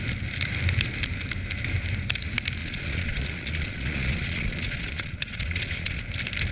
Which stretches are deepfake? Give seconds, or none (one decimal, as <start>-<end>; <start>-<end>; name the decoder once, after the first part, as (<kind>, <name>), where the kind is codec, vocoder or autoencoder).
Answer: 2.6-6.0 (vocoder, Vocos)